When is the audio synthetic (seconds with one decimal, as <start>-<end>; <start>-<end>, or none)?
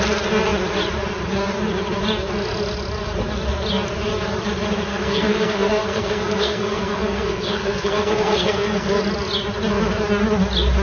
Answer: 4.9-9.0